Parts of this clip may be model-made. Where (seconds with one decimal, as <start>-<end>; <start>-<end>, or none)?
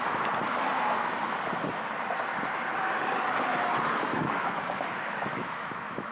4.1-6.1